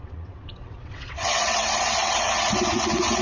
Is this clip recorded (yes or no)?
no